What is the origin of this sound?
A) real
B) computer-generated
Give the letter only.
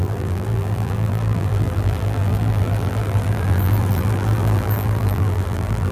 B